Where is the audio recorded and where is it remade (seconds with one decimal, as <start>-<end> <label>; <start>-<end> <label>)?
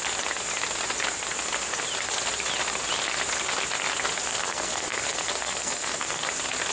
0.0-4.3 recorded; 4.3-6.2 remade; 6.2-6.7 recorded